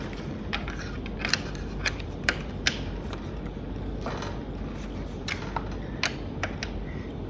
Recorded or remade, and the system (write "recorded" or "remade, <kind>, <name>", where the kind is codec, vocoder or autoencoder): recorded